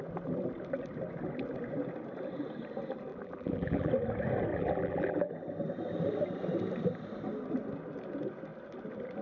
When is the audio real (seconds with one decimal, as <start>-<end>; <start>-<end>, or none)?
0.0-3.1; 3.9-4.5; 5.3-9.2

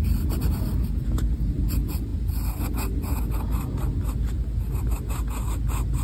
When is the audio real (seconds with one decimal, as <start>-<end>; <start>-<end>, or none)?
0.0-6.0

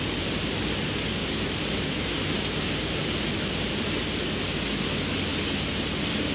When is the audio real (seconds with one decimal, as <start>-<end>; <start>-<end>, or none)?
0.0-6.3

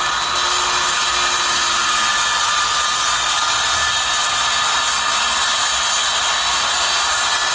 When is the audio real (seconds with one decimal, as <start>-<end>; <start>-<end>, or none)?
0.0-7.5

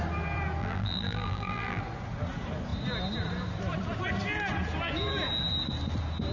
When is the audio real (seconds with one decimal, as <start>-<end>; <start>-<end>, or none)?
0.0-0.6; 1.8-6.3

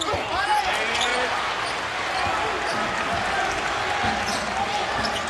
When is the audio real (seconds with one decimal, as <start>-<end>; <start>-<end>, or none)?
0.0-5.3

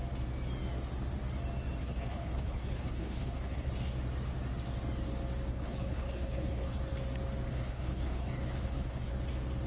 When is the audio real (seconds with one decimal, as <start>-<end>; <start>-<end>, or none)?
0.0-1.8; 3.7-5.5; 6.8-7.5; 9.1-9.7